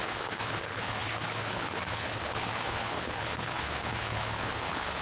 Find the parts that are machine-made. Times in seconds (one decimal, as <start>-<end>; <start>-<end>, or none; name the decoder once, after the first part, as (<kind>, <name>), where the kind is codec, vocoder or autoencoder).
0.0-5.0 (codec, HILCodec)